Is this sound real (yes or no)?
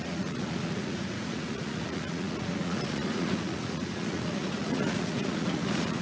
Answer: no